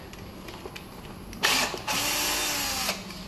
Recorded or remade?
recorded